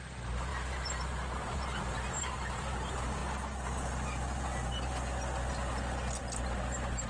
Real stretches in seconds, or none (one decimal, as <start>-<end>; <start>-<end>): 3.2-6.2

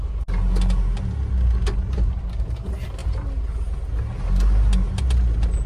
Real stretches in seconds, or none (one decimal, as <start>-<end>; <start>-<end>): 0.0-5.7